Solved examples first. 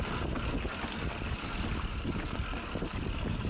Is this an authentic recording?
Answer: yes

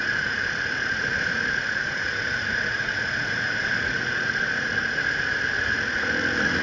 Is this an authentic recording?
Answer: no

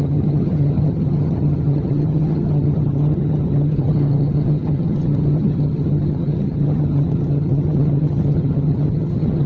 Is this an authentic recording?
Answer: no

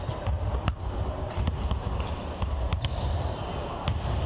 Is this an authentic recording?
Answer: yes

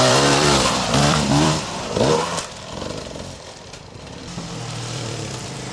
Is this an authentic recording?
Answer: no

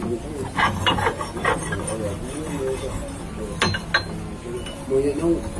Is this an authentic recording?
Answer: yes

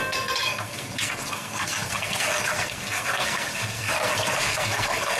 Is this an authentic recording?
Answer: no